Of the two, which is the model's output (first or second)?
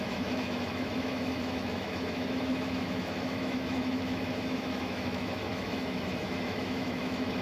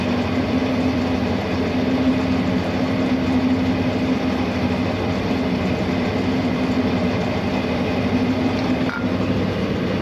first